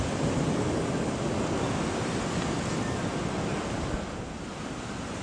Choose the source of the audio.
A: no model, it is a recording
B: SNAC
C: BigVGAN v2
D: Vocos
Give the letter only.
A